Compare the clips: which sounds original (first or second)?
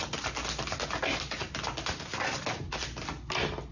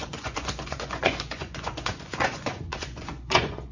first